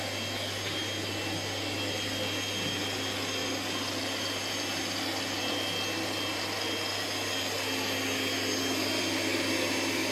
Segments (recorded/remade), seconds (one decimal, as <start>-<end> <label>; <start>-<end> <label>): 0.0-10.1 recorded